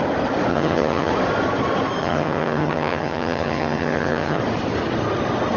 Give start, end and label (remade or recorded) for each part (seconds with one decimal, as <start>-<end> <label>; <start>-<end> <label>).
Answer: 0.0-0.5 recorded; 0.5-1.1 remade; 1.1-2.0 recorded; 2.0-4.4 remade; 4.4-5.6 recorded